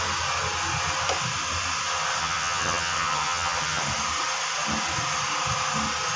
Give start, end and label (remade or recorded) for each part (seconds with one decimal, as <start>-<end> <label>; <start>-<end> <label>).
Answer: 0.0-2.2 recorded; 2.2-3.8 remade; 3.8-6.2 recorded